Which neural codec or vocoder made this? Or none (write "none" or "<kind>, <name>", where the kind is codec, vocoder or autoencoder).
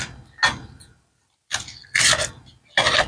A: none